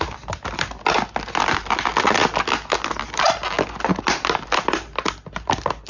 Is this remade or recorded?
recorded